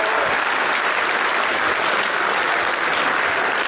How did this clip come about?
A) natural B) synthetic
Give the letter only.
A